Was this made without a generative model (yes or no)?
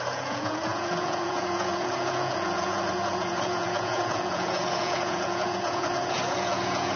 no